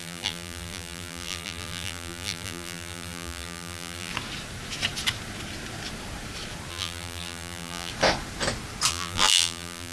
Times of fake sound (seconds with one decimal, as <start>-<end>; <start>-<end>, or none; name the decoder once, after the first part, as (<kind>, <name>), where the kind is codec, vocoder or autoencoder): 0.0-4.1 (vocoder, BigVGAN v2); 6.7-7.9; 8.9-9.9